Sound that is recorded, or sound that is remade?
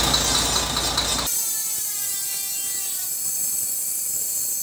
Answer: recorded